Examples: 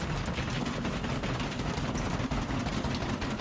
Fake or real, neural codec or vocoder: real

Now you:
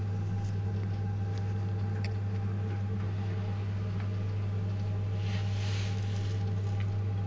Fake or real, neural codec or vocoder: real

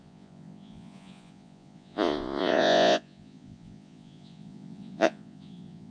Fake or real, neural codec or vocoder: fake, vocoder, Vocos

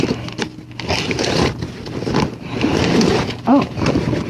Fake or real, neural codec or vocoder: real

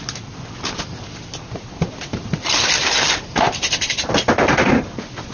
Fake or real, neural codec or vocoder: real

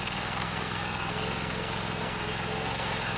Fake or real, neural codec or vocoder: fake, codec, SNAC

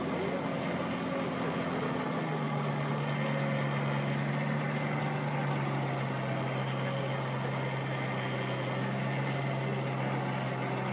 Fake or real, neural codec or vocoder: real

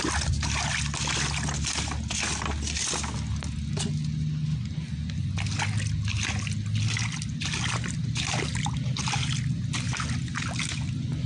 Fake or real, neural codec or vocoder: real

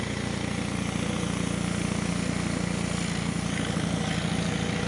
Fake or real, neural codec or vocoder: real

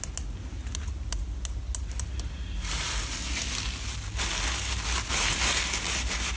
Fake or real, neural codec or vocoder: real